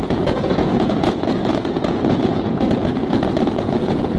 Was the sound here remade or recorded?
remade